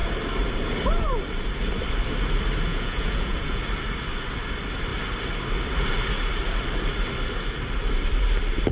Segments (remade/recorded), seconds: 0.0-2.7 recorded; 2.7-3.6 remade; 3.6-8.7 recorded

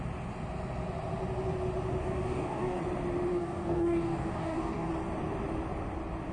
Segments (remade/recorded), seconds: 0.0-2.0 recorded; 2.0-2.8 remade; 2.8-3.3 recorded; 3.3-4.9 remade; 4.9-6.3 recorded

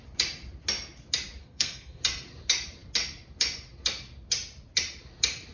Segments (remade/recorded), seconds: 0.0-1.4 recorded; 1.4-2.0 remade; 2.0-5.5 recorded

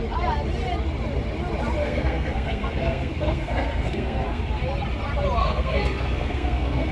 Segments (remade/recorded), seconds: 0.0-1.8 recorded; 1.8-4.4 remade; 4.4-5.4 recorded; 5.4-6.9 remade

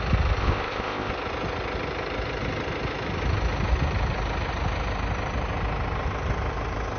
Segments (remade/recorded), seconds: 0.0-0.4 recorded; 0.4-1.1 remade; 1.1-7.0 recorded

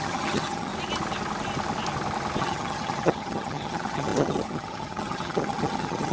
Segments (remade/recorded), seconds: 0.0-0.7 remade; 0.7-2.4 recorded; 2.4-6.1 remade